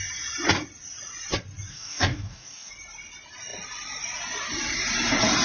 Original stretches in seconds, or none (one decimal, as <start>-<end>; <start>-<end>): 0.0-1.7; 2.7-5.4